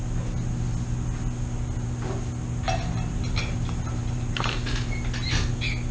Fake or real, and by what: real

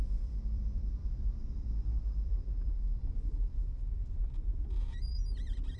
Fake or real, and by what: fake, vocoder, BigVGAN v2